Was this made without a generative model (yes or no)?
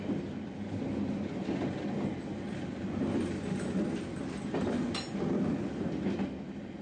yes